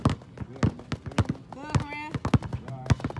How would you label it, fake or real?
real